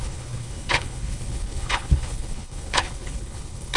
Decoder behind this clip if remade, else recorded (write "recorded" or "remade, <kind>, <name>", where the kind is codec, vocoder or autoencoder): remade, codec, HILCodec